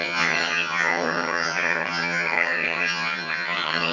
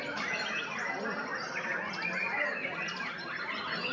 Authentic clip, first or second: second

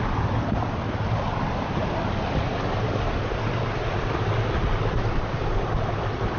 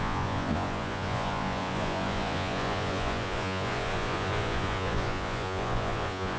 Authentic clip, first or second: first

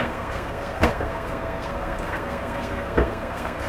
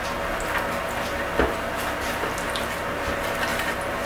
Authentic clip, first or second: second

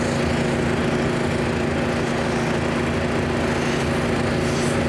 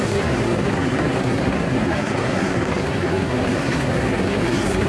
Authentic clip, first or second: first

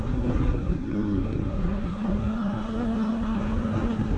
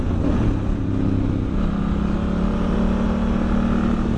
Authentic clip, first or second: second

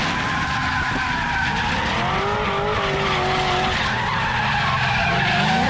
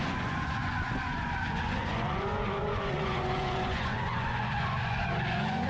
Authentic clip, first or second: first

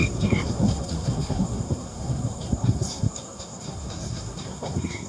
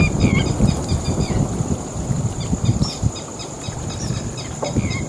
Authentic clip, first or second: second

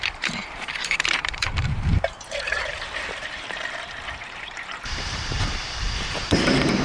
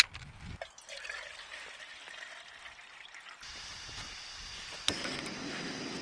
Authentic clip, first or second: second